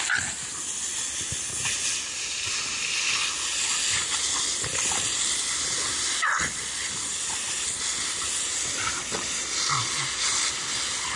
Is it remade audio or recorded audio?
recorded